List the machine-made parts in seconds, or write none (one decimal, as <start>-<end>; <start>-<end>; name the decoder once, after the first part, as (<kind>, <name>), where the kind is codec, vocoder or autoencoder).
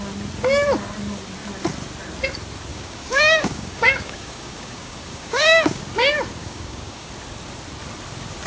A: 2.7-5.8 (codec, DAC); 6.4-7.1